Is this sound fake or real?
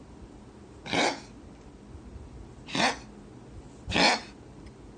real